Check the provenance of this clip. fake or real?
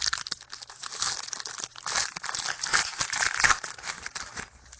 real